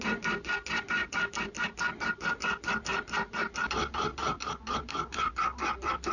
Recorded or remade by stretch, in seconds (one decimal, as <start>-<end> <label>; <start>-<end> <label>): 0.0-1.0 recorded; 1.0-2.3 remade; 2.3-2.9 recorded; 2.9-3.6 remade; 3.6-4.2 recorded; 4.2-5.3 remade; 5.3-6.1 recorded